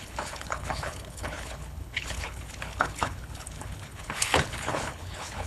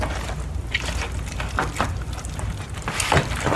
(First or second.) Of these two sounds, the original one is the second